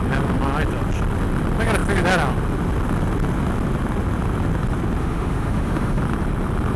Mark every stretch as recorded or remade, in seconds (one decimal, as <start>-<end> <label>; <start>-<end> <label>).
0.0-5.0 recorded; 5.0-6.0 remade; 6.0-6.8 recorded